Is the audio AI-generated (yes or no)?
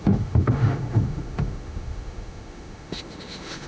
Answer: yes